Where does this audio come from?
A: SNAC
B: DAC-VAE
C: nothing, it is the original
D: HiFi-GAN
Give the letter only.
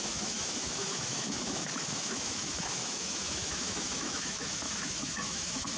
B